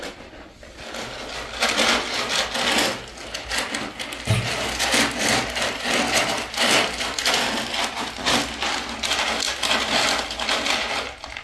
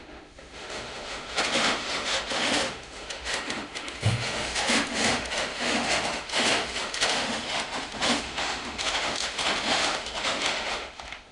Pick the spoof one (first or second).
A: second